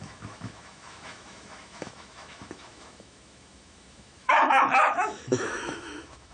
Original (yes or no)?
no